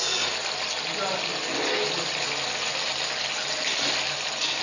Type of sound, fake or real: real